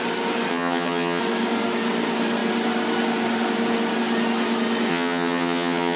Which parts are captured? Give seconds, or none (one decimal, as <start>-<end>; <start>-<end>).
0.0-0.5; 1.2-4.9